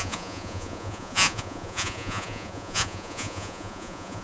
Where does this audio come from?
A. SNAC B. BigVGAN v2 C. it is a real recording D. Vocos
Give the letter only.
D